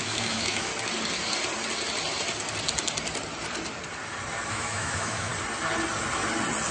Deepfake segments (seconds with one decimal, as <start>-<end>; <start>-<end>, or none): 0.0-0.7; 4.5-5.3